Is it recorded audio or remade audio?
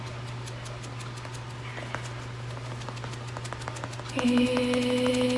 recorded